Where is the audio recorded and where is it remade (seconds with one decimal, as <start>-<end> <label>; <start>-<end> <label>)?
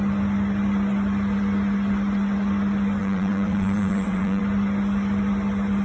0.0-3.0 recorded; 3.0-4.4 remade; 4.4-5.8 recorded